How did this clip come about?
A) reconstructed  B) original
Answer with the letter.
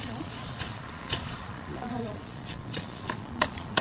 A